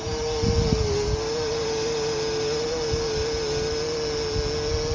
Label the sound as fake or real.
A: real